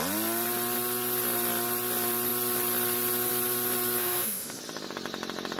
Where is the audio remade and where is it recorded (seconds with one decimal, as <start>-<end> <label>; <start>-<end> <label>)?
0.0-4.0 recorded; 4.0-4.6 remade; 4.6-5.6 recorded